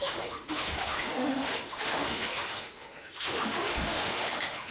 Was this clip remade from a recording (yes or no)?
yes